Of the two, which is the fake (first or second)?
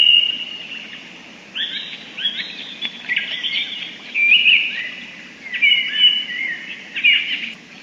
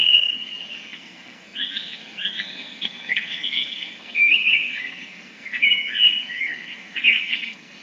second